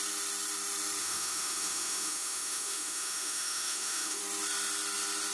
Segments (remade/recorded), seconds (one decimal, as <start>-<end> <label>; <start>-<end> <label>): 0.0-1.0 recorded; 1.0-4.2 remade; 4.2-5.3 recorded